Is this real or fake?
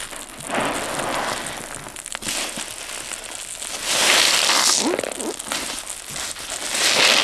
real